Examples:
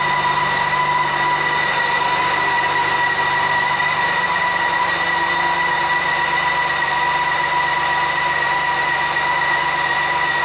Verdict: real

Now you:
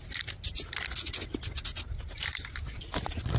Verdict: real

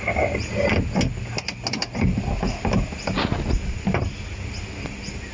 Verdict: real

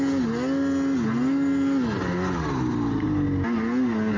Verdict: real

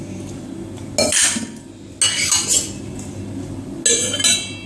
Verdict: real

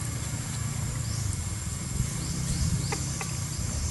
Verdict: real